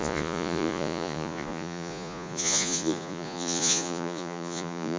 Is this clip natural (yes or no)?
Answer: no